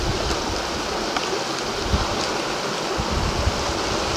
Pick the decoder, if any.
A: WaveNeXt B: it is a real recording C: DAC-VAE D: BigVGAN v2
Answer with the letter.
B